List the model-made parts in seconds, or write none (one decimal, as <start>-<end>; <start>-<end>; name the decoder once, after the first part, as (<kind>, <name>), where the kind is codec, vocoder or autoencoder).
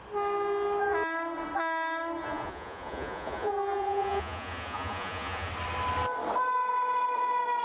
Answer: 2.2-5.5 (vocoder, Vocos)